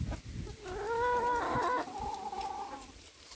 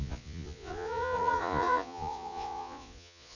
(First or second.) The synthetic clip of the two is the second